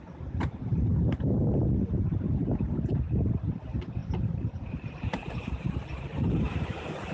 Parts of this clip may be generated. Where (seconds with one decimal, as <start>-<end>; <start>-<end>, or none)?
0.0-0.9; 1.8-2.4; 2.9-4.0; 4.7-7.1